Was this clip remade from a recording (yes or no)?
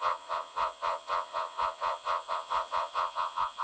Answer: yes